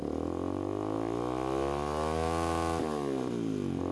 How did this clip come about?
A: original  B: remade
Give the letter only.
A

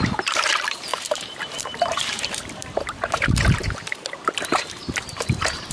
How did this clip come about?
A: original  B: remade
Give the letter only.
B